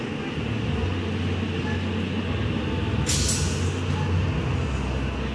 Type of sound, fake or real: real